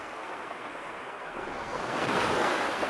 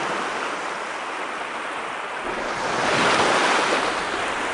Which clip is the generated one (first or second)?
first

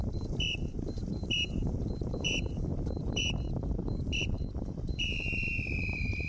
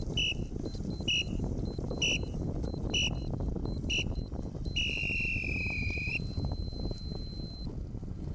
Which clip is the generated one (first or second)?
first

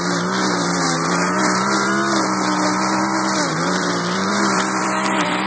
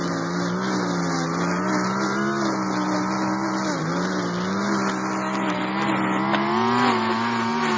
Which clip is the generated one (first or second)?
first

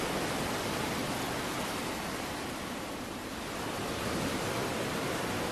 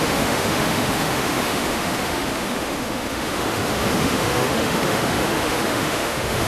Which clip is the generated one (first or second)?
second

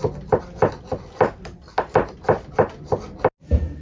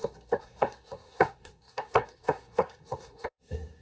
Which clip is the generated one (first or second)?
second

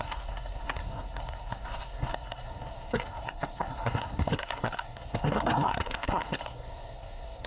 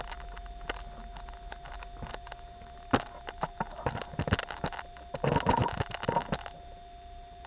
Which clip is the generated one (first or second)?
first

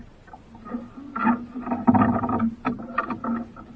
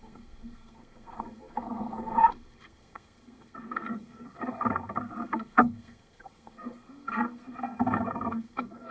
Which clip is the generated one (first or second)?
second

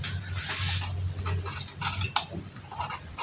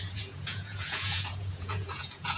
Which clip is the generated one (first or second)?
second